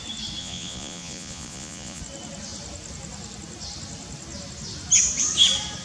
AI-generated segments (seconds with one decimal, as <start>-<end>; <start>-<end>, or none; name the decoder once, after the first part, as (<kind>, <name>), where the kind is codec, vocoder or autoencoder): 0.4-2.0 (vocoder, Vocos)

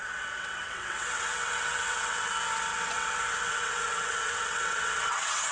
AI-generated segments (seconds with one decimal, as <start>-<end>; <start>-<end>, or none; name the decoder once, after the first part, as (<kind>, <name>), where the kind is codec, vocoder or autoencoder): 0.0-2.3 (vocoder, WaveNeXt); 2.7-5.5

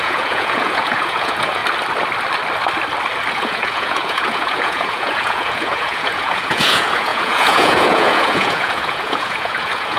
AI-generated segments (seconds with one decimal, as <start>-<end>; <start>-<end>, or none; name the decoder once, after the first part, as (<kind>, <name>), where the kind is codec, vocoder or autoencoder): 0.0-1.6 (vocoder, Vocos); 3.3-10.0

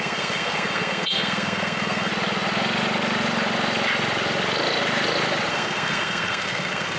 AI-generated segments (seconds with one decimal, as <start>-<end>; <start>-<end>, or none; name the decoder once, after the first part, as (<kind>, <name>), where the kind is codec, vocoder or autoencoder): 0.0-2.1 (codec, SNAC); 5.5-7.0

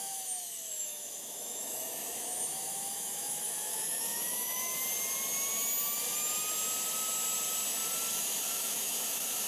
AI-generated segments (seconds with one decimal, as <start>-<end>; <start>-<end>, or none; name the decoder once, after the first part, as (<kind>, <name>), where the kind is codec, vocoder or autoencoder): 0.0-4.7 (autoencoder, DAC-VAE); 8.4-9.5

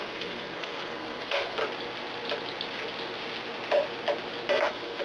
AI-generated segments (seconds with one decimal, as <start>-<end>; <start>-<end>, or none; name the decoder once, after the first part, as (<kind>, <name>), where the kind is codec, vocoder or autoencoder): 0.0-1.6 (codec, SNAC); 4.6-5.0